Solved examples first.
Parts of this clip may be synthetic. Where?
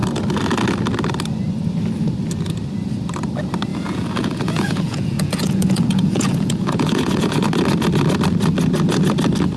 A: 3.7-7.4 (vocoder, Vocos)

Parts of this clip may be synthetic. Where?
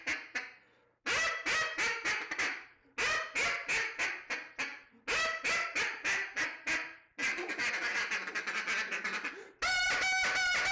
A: none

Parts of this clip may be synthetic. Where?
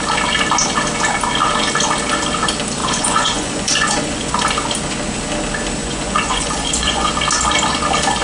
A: 2.8-4.3 (vocoder, Vocos); 5.8-7.1